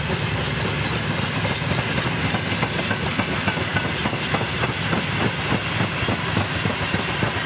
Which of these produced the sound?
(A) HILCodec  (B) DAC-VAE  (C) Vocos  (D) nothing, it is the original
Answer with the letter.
D